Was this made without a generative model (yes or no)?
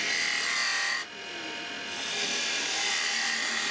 yes